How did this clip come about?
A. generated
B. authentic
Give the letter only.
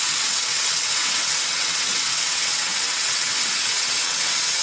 A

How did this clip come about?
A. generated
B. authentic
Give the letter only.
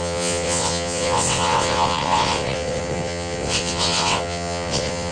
A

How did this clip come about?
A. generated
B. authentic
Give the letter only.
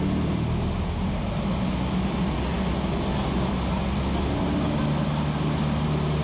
B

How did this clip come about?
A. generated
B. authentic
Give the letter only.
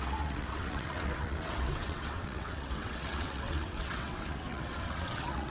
A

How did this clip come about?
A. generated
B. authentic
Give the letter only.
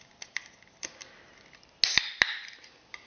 B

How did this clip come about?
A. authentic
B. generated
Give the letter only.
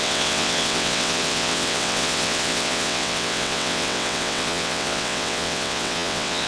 B